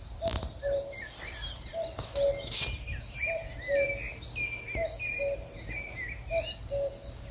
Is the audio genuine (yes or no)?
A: yes